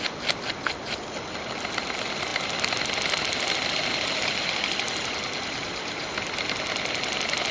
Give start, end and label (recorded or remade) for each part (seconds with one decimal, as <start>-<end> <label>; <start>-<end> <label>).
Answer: 0.0-7.5 recorded